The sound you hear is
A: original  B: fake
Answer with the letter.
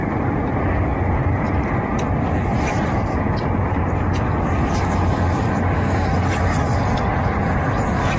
A